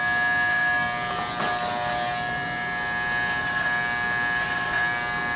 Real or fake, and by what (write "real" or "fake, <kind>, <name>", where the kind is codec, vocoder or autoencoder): real